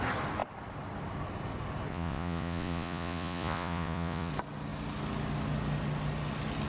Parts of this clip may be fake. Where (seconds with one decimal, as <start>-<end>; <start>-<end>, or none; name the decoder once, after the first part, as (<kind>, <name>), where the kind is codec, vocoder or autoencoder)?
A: 1.9-4.3 (vocoder, Vocos)